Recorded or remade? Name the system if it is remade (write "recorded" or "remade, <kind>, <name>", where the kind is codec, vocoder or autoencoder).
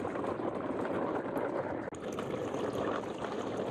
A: recorded